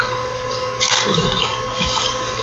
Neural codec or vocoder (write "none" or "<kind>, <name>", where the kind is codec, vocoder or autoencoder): codec, DAC